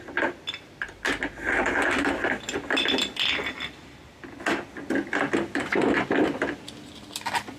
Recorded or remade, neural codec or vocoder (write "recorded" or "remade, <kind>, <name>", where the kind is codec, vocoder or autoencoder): recorded